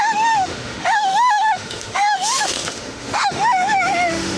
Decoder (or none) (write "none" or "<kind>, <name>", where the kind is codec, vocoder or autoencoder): autoencoder, DAC-VAE